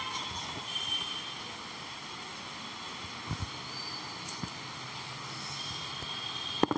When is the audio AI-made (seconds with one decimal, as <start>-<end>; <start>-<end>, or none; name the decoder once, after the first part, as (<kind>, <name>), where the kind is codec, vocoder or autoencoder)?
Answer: none